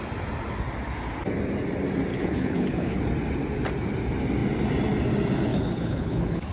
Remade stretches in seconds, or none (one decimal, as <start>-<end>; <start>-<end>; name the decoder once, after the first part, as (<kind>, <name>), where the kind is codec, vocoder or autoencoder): 2.1-3.0 (codec, HILCodec); 5.5-6.5